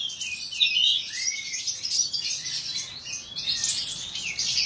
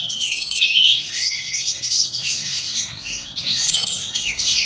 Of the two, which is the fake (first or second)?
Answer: second